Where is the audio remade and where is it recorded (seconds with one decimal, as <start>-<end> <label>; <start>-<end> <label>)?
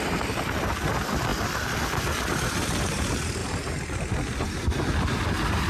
0.0-3.4 recorded; 3.4-4.1 remade; 4.1-5.7 recorded